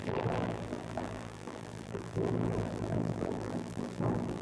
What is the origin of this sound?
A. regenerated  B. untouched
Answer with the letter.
A